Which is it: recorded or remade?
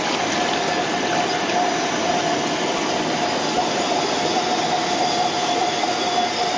recorded